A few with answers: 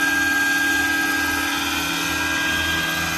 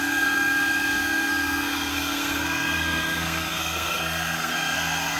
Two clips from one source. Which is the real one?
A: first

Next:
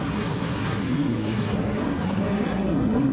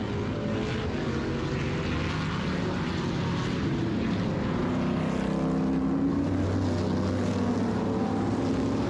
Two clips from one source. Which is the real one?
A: second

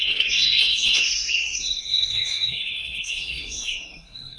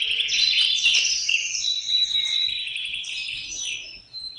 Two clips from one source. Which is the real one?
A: second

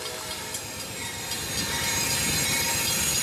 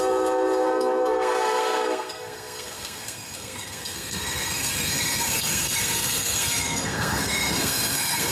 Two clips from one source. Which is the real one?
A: first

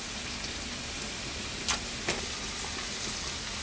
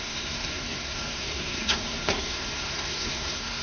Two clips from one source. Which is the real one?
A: first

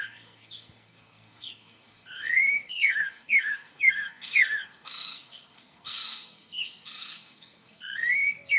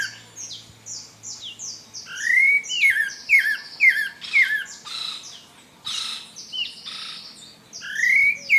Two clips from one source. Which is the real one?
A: second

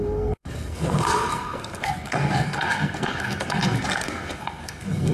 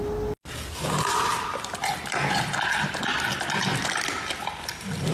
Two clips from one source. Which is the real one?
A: second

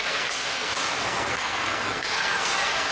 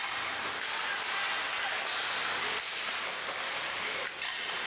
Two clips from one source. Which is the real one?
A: second